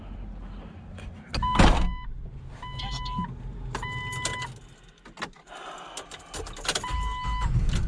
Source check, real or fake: real